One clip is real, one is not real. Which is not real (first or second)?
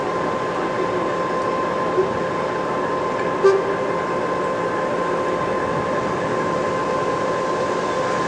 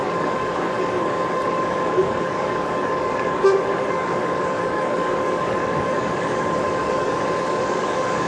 second